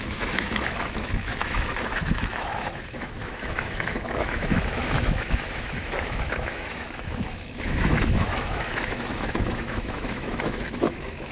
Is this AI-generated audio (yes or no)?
yes